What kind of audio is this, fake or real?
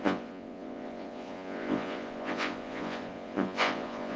fake